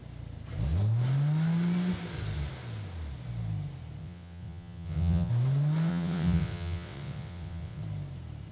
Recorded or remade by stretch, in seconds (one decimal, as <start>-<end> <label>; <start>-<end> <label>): 0.0-4.0 recorded; 4.0-5.3 remade; 5.3-5.9 recorded; 5.9-7.8 remade; 7.8-8.5 recorded